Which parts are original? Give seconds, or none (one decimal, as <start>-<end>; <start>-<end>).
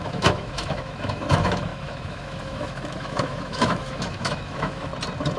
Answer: 4.9-5.4